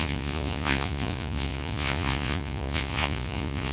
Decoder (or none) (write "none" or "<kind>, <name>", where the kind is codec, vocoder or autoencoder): vocoder, Vocos